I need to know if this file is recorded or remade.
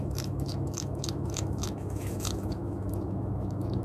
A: remade